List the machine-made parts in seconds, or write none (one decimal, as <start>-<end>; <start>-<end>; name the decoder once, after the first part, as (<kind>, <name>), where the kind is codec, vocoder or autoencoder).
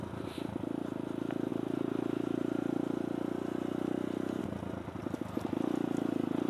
none